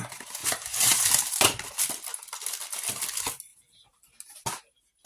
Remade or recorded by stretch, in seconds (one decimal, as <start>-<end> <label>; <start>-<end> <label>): 0.0-0.4 recorded; 0.4-1.5 remade; 1.5-5.1 recorded